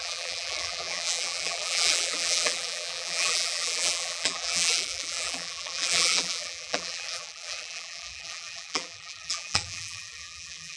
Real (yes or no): no